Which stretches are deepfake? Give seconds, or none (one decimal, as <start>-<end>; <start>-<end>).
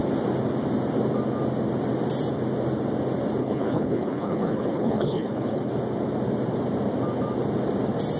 3.4-5.7